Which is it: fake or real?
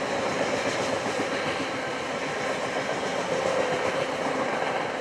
real